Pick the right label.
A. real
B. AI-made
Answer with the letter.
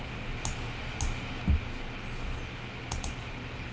A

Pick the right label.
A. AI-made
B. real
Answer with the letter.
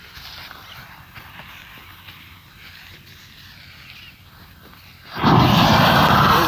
B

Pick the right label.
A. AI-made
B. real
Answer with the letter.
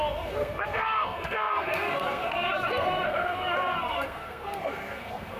A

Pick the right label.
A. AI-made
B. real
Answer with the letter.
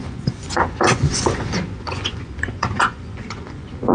A